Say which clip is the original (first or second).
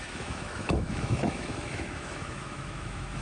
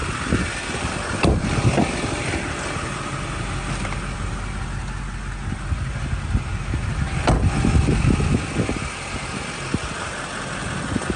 second